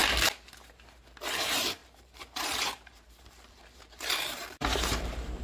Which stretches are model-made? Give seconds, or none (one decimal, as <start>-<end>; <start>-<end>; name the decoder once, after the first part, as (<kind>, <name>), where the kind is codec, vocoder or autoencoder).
1.2-5.4 (vocoder, BigVGAN v2)